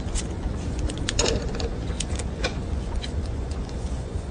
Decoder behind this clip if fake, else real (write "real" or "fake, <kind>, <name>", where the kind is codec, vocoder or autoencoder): fake, vocoder, Vocos